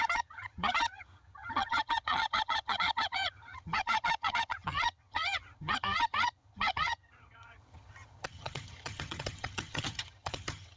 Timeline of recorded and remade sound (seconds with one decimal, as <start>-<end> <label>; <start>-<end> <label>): 0.0-10.8 remade